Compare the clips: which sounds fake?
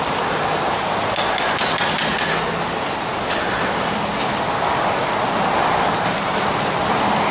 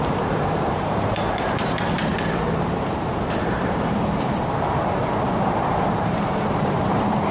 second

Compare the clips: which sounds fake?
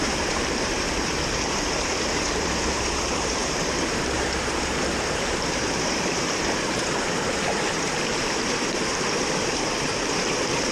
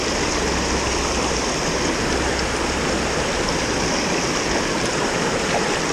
first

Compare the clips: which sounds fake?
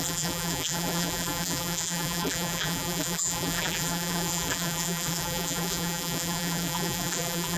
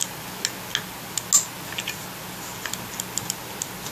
first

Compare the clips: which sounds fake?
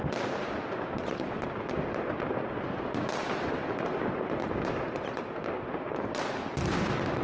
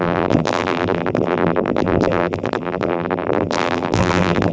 second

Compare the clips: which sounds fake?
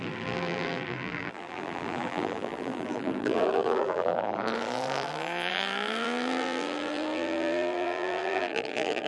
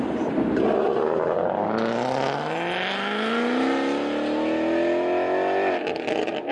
first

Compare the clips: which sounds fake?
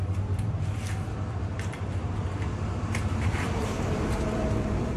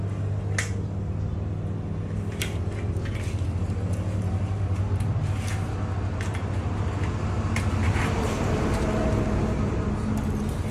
first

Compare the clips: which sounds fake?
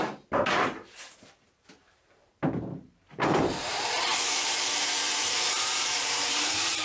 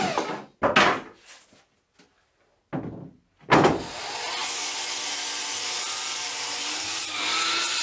first